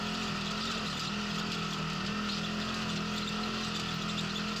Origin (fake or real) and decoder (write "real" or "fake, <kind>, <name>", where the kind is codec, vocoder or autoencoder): real